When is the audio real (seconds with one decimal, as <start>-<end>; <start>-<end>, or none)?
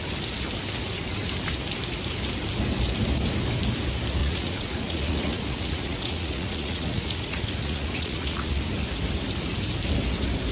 0.0-4.2; 8.6-10.5